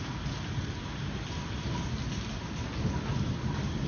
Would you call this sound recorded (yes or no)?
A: yes